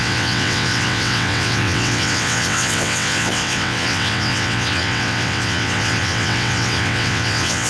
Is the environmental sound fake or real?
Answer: fake